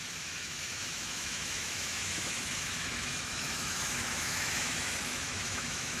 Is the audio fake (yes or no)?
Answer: yes